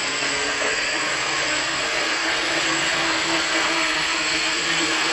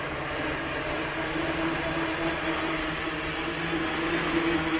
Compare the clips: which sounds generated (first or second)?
first